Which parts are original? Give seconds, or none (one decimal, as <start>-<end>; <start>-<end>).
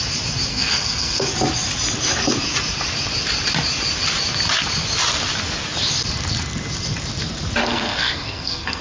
0.0-0.5; 1.3-7.6